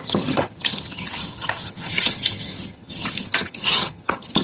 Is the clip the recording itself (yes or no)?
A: no